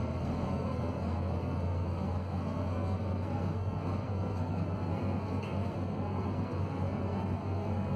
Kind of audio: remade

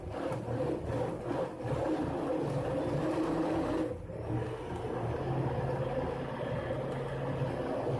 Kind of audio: recorded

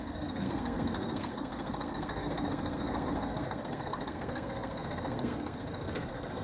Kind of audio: remade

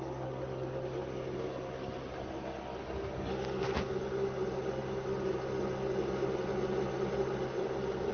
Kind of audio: recorded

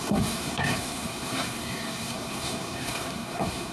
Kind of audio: remade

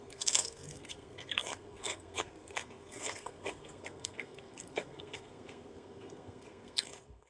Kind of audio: remade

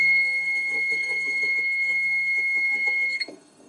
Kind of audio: remade